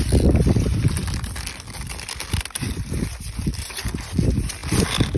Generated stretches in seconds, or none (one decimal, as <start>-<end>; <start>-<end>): none